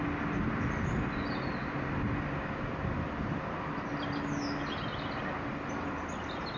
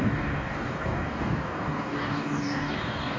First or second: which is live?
first